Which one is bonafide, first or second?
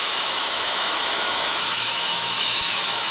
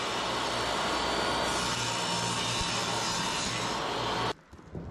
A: second